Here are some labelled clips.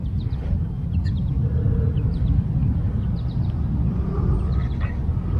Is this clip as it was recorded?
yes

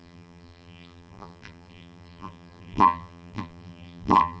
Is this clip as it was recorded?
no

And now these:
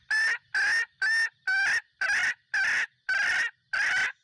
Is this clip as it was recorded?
yes